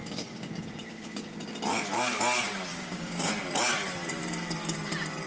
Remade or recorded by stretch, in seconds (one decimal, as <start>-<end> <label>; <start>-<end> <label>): 0.0-1.3 remade; 1.3-2.7 recorded; 2.7-3.3 remade; 3.3-5.3 recorded